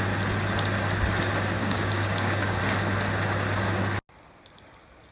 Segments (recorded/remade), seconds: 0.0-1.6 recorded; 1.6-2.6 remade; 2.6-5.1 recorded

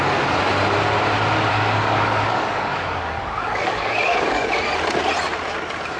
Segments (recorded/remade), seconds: 0.0-1.5 recorded; 1.5-4.5 remade; 4.5-6.0 recorded

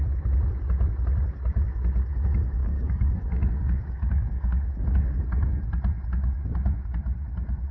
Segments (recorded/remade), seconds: 0.0-2.6 recorded; 2.6-5.2 remade; 5.2-7.7 recorded

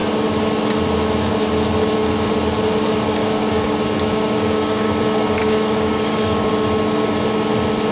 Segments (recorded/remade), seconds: 0.0-3.2 recorded; 3.2-4.9 remade; 4.9-5.4 recorded; 5.4-6.5 remade; 6.5-7.9 recorded

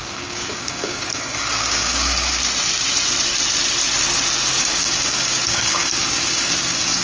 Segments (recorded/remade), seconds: 0.0-2.4 remade; 2.4-4.6 recorded; 4.6-7.0 remade

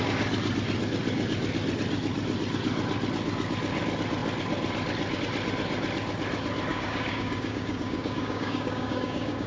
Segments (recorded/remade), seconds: 0.0-6.7 recorded; 6.7-9.5 remade